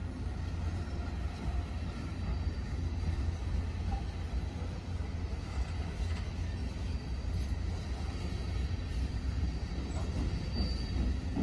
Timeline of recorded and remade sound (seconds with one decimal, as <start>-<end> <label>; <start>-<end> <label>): 0.0-11.4 recorded